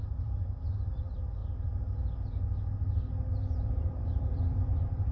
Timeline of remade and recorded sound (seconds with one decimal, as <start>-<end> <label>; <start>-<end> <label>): 0.0-1.4 remade; 1.4-3.7 recorded; 3.7-5.1 remade